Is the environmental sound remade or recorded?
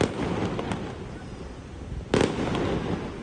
recorded